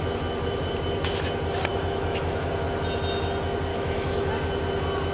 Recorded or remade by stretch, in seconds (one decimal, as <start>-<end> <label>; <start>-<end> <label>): 0.0-1.7 recorded; 1.7-2.4 remade; 2.4-3.7 recorded; 3.7-4.3 remade; 4.3-5.1 recorded